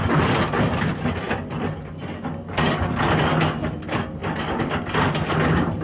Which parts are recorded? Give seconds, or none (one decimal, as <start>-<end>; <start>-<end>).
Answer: 0.0-5.8